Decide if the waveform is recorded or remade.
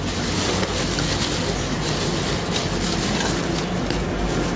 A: recorded